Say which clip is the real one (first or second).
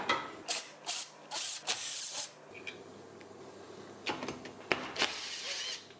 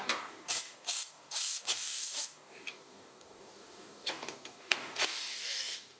first